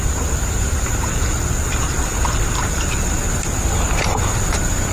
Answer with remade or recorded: recorded